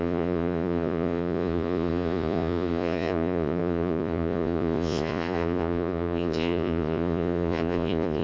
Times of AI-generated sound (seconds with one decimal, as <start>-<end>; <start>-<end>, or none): 0.0-8.2